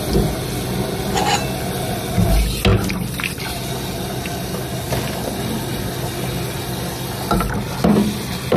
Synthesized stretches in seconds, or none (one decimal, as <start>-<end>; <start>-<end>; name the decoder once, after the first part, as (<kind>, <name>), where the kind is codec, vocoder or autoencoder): none